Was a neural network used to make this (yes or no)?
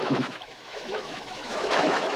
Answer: yes